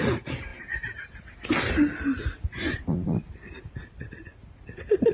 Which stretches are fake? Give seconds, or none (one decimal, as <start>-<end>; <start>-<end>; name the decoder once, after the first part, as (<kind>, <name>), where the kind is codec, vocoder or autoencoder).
0.0-0.5 (vocoder, BigVGAN v2); 3.6-4.3

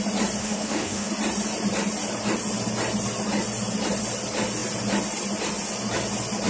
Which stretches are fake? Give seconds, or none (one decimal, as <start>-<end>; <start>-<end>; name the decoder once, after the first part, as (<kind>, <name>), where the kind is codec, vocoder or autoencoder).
0.4-1.1 (autoencoder, DAC-VAE)

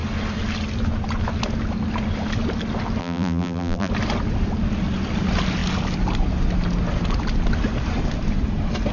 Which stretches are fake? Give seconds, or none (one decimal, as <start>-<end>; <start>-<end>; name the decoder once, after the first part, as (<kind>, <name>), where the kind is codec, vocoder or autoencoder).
3.0-3.9 (vocoder, BigVGAN v2)

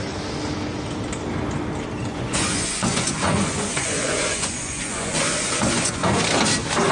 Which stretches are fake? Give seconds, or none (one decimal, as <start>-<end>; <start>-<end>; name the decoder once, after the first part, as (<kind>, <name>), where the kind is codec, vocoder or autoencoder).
2.1-6.1 (vocoder, Vocos)